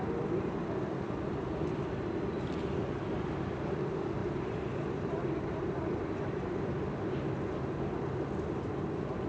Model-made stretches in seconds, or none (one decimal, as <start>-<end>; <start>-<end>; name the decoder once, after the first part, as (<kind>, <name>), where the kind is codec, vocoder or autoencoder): 4.2-6.7 (vocoder, BigVGAN v2)